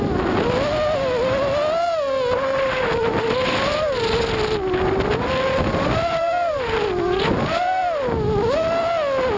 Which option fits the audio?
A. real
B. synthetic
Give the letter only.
A